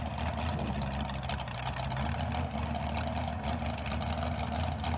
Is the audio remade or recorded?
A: recorded